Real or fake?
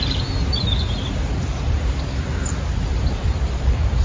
real